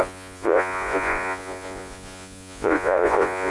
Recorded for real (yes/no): no